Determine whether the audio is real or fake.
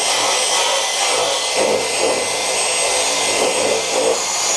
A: real